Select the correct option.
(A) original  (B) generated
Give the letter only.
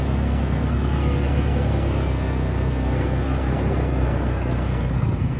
B